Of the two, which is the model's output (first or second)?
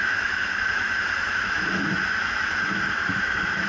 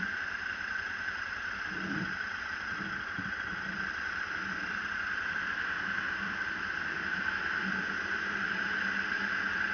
first